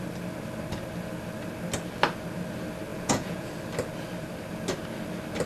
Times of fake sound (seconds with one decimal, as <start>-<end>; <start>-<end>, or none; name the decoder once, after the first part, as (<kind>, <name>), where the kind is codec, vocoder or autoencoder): 2.9-3.5 (vocoder, Vocos)